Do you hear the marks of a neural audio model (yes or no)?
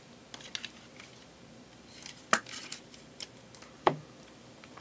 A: no